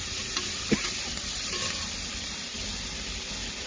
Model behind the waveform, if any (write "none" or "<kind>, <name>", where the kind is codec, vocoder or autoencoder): none